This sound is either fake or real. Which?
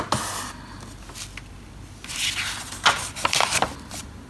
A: real